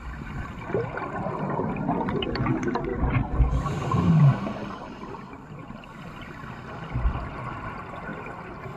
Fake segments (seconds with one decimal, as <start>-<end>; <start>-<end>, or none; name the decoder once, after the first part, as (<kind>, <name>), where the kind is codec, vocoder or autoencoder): 0.0-2.9 (vocoder, BigVGAN v2); 4.1-8.1